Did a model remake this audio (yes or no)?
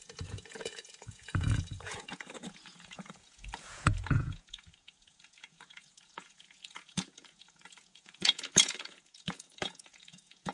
yes